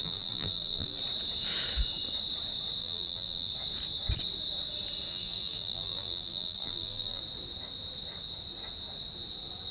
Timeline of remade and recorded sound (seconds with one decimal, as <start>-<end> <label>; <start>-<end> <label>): 0.0-1.0 remade; 1.0-2.8 recorded; 2.8-3.5 remade; 3.5-5.1 recorded; 5.1-7.2 remade; 7.2-9.7 recorded